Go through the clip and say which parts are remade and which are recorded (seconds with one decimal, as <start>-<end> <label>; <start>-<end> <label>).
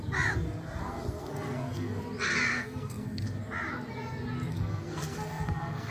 0.0-0.8 recorded; 0.8-2.0 remade; 2.0-2.5 recorded; 2.5-3.4 remade; 3.4-4.5 recorded; 4.5-5.9 remade